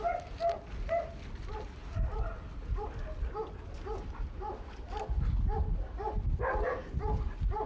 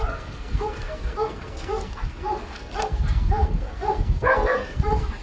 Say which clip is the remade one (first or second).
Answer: second